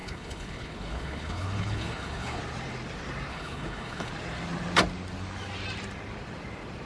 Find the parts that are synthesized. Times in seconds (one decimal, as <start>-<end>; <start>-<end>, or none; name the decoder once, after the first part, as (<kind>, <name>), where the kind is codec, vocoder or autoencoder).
0.0-2.4 (codec, HILCodec); 3.3-4.1